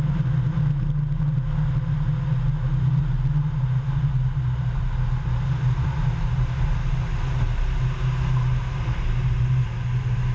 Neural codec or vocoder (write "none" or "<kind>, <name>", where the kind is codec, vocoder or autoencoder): none